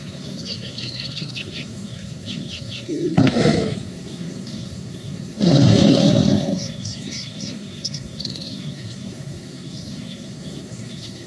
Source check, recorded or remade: remade